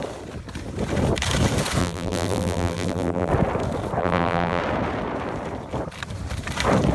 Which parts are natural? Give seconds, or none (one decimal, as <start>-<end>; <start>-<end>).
0.0-1.8; 3.3-4.0; 4.6-6.9